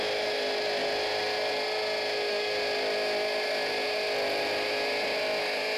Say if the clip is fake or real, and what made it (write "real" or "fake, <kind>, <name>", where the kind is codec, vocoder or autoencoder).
real